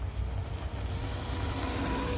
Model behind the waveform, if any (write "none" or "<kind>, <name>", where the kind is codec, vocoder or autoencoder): none